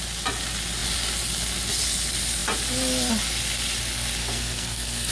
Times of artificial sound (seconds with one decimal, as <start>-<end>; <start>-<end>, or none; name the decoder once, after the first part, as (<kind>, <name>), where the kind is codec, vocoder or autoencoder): 4.2-5.1 (codec, SNAC)